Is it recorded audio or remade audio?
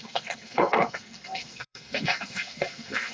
remade